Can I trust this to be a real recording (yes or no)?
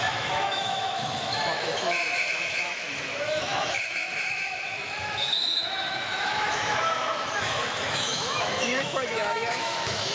no